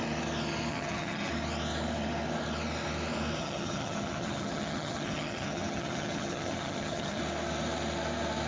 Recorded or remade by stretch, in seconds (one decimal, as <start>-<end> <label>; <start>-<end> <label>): 0.0-0.7 recorded; 0.7-1.3 remade; 1.3-3.4 recorded; 3.4-7.2 remade; 7.2-8.5 recorded